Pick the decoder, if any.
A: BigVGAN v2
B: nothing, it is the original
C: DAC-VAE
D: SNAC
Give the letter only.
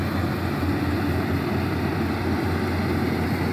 B